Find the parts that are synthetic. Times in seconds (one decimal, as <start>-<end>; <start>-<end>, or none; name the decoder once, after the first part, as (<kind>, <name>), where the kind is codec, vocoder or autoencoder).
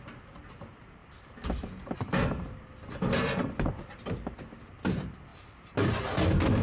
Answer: none